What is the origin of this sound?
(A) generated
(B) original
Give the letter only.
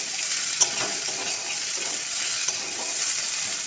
B